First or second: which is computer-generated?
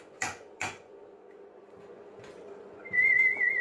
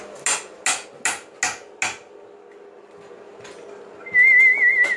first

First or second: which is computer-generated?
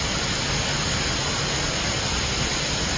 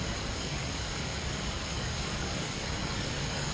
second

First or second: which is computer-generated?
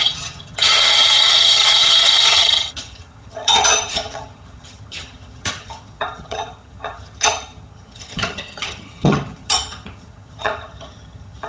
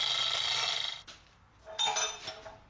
first